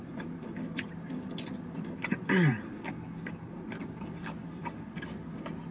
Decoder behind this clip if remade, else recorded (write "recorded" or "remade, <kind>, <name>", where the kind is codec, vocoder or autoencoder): recorded